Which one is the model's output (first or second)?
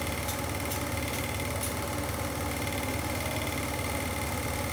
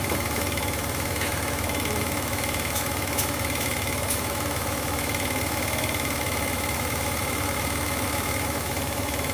second